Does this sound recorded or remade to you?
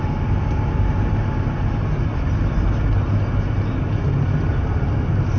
recorded